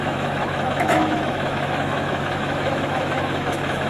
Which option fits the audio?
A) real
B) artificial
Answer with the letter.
B